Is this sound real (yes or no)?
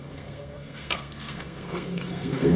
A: no